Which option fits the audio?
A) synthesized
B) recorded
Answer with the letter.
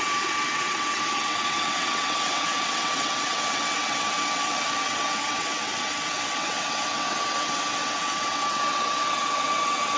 A